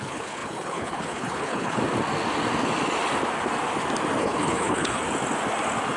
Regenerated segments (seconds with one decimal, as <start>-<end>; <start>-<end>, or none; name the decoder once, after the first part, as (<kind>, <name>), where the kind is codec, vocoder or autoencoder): 0.0-1.8 (codec, HILCodec); 4.2-5.0